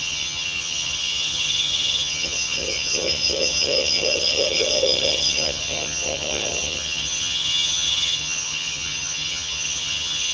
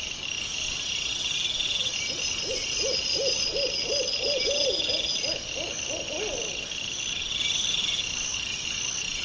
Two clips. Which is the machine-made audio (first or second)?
first